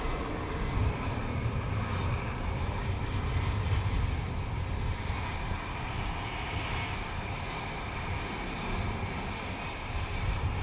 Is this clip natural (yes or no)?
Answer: yes